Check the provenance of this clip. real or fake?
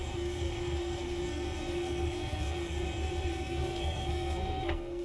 fake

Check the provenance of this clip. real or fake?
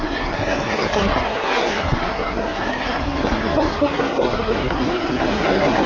fake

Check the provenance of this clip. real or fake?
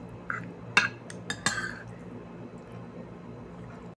real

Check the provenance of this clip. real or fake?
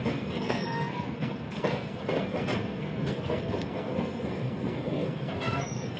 fake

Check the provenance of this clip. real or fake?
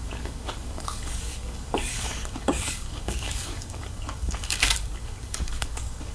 fake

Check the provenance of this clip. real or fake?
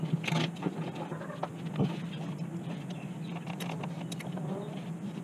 fake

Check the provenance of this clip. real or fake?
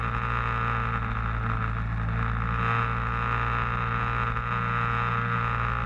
real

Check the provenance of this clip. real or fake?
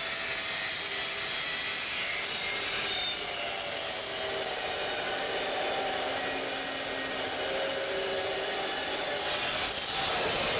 real